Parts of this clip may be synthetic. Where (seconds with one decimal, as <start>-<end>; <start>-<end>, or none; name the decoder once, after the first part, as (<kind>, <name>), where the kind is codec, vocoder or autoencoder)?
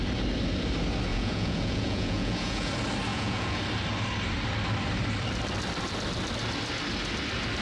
1.1-2.7 (vocoder, Vocos); 3.1-3.6